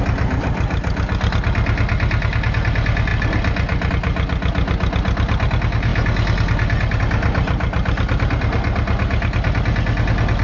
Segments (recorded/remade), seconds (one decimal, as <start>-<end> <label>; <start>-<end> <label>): 0.0-10.4 recorded